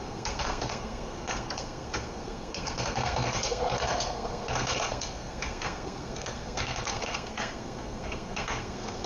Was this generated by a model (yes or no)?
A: yes